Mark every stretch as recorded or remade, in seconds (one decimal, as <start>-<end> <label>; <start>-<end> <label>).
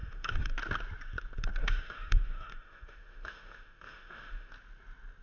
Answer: 0.0-0.5 remade; 0.5-1.6 recorded; 1.6-4.5 remade; 4.5-5.2 recorded